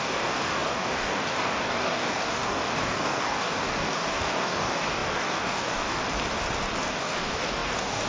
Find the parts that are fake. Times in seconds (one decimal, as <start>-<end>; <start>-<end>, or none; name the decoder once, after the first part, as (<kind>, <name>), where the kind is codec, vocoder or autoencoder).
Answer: 0.0-6.0 (codec, DAC); 6.9-8.1